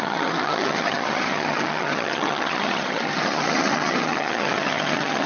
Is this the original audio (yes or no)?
no